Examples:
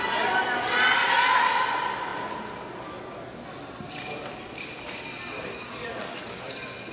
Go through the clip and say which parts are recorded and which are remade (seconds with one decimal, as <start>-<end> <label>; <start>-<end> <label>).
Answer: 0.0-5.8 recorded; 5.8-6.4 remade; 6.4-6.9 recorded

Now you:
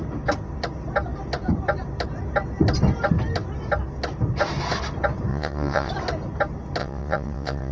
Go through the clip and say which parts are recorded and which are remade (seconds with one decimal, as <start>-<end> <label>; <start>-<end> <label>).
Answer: 0.0-5.3 recorded; 5.3-5.9 remade; 5.9-6.8 recorded; 6.8-7.7 remade

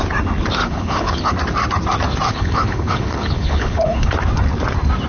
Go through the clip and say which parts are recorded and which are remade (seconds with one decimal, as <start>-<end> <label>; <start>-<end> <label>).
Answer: 0.0-0.6 recorded; 0.6-1.3 remade; 1.3-2.3 recorded; 2.3-4.1 remade; 4.1-5.1 recorded